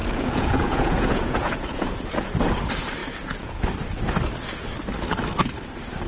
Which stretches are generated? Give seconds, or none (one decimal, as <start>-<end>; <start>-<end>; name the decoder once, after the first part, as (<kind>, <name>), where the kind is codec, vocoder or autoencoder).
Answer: 0.0-2.2 (vocoder, Vocos); 3.0-3.6